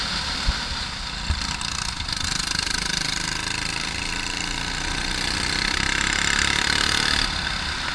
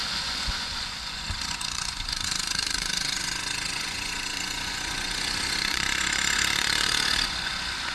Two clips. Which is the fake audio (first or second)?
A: second